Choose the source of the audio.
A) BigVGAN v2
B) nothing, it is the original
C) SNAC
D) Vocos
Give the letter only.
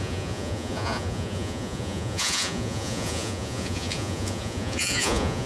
D